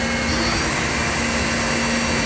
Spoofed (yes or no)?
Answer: no